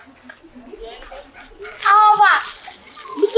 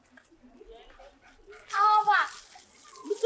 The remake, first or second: second